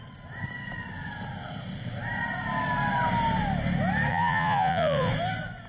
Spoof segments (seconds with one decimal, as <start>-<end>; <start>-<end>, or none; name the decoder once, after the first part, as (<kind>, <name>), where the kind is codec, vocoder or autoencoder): 4.1-5.1 (vocoder, Vocos)